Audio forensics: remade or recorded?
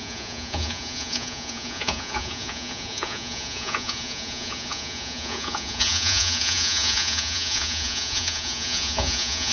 remade